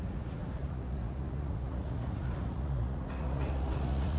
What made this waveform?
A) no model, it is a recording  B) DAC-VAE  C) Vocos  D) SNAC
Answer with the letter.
C